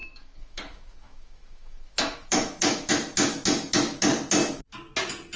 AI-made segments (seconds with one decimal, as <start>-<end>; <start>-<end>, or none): 0.0-2.9